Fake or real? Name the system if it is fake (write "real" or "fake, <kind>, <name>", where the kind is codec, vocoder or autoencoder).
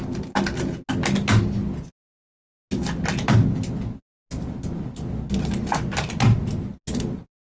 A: real